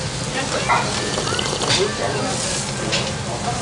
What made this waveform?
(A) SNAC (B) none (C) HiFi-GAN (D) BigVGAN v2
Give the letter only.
B